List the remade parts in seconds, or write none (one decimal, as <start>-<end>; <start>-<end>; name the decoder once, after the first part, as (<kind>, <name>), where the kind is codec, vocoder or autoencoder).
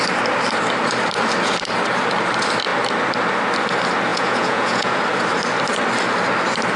4.1-5.0 (vocoder, Vocos)